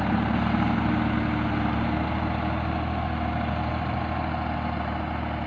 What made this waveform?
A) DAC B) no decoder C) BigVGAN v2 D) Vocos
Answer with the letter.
B